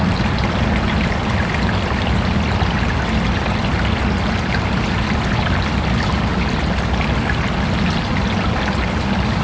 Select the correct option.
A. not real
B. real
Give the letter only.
B